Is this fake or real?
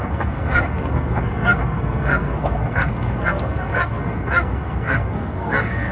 fake